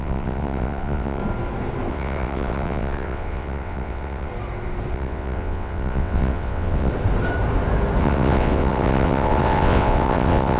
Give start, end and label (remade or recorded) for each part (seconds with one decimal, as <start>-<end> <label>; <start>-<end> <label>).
0.0-1.2 remade; 1.2-1.9 recorded; 1.9-4.3 remade; 4.3-4.9 recorded; 4.9-6.9 remade; 6.9-8.0 recorded; 8.0-10.6 remade